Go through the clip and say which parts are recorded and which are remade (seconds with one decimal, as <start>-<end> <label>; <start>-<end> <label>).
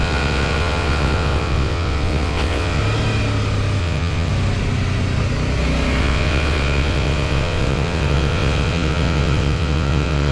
0.0-2.8 remade; 2.8-3.8 recorded; 3.8-4.3 remade; 4.3-6.0 recorded; 6.0-10.3 remade